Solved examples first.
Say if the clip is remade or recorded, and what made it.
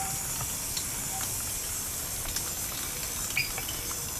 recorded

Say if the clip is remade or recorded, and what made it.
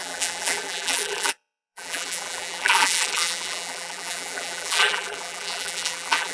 remade, vocoder, BigVGAN v2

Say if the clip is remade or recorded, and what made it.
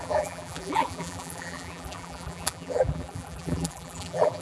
remade, vocoder, BigVGAN v2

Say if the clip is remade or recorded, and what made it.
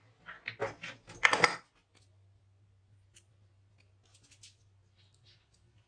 recorded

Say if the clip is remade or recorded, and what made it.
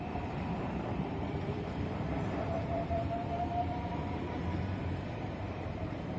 remade, vocoder, BigVGAN v2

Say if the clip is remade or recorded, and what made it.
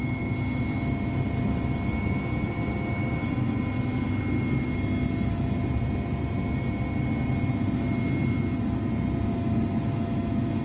recorded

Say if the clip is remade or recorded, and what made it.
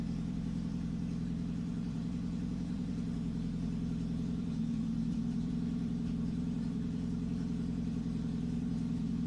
remade, vocoder, BigVGAN v2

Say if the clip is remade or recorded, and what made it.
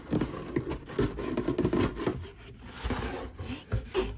recorded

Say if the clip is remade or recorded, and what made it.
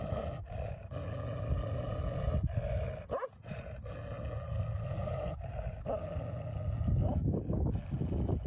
recorded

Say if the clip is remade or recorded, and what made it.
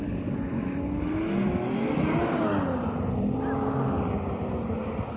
recorded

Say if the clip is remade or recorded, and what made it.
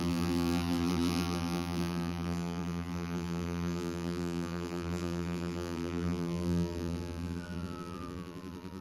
remade, vocoder, BigVGAN v2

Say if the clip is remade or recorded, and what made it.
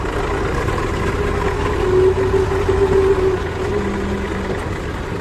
recorded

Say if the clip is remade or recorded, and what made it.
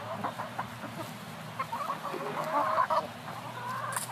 recorded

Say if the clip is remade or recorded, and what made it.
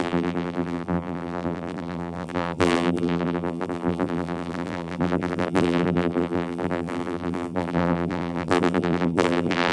remade, vocoder, BigVGAN v2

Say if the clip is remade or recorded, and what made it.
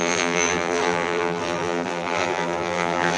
remade, vocoder, BigVGAN v2